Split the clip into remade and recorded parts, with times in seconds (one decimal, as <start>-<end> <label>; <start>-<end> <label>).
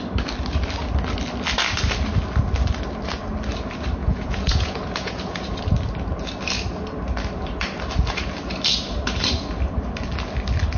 0.0-4.0 recorded; 4.0-5.6 remade; 5.6-10.8 recorded